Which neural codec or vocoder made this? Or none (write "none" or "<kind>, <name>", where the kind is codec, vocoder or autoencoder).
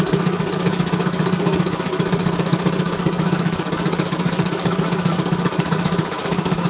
codec, DAC